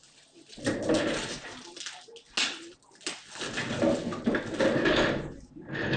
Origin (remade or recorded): recorded